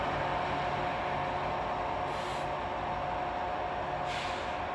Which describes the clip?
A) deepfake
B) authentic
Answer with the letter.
B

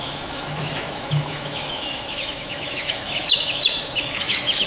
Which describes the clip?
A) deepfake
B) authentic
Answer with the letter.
A